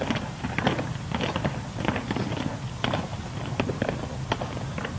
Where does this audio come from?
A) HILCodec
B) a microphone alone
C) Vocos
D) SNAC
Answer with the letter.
B